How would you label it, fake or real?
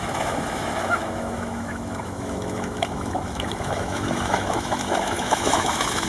fake